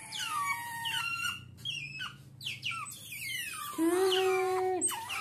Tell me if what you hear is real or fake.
real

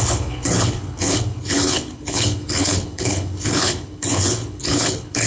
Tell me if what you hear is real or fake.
fake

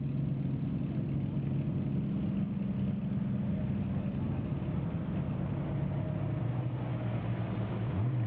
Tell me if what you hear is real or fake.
real